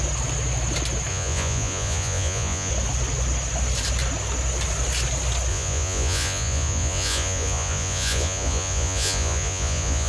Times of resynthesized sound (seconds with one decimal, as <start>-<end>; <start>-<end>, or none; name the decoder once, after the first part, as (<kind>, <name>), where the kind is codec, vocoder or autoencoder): 1.1-2.7 (vocoder, Vocos); 5.5-10.1